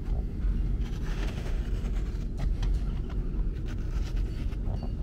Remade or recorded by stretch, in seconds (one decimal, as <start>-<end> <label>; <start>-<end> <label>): 0.0-1.1 recorded; 1.1-1.6 remade; 1.6-5.0 recorded